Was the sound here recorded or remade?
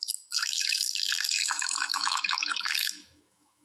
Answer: remade